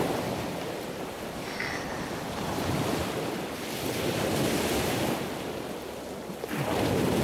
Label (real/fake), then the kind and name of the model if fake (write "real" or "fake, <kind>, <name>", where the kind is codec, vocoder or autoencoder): real